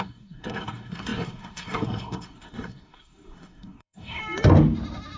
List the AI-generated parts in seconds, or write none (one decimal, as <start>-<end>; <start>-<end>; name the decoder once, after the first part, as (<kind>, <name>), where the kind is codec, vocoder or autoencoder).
0.0-4.2 (codec, SNAC)